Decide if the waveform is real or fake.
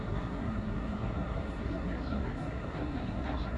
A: fake